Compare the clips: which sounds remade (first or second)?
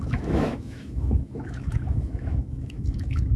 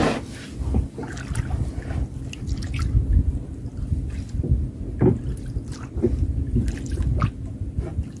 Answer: first